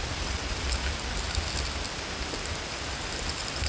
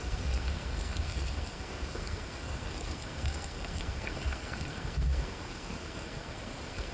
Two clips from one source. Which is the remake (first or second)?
second